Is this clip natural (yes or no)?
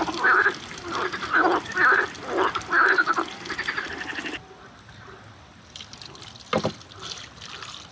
yes